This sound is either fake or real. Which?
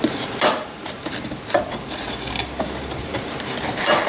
real